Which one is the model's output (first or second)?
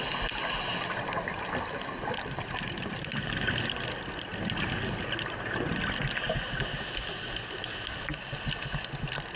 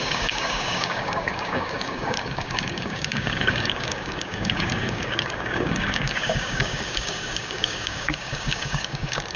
second